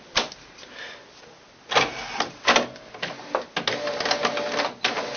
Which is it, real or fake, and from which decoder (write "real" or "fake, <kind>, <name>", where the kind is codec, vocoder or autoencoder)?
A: real